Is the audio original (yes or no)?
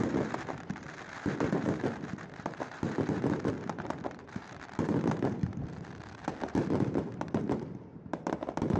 no